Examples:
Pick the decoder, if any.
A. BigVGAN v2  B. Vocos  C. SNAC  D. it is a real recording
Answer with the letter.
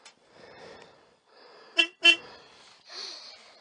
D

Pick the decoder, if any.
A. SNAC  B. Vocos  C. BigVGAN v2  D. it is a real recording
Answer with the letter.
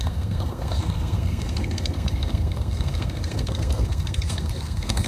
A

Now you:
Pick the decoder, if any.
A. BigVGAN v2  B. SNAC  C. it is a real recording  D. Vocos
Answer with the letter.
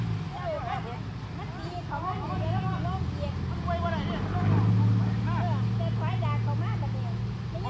C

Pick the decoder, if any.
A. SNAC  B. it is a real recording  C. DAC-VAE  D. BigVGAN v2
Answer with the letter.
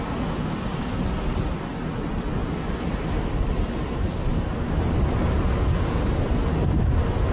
B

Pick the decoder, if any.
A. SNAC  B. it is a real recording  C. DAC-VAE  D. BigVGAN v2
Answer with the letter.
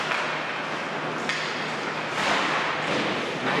B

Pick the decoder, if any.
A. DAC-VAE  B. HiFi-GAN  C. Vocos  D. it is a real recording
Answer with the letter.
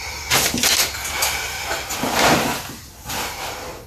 D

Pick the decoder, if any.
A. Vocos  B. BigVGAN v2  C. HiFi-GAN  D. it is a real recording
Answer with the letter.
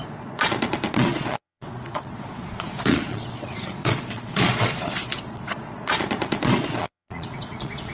A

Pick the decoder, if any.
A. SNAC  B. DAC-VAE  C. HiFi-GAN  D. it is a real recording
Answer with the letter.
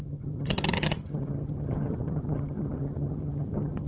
C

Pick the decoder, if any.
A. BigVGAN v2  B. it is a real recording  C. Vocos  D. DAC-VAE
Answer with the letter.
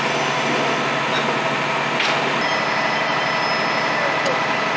B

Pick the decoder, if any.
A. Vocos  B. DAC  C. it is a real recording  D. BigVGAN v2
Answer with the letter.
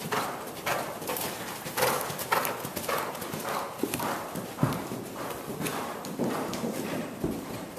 C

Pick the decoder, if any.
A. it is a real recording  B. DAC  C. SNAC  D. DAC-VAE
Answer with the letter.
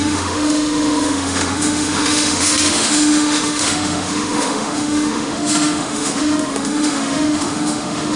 D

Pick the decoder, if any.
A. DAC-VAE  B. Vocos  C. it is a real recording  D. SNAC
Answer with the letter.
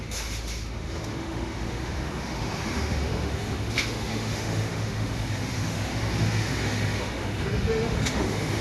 A